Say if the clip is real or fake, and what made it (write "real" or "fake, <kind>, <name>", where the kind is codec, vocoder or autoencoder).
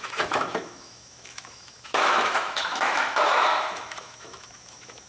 fake, autoencoder, DAC-VAE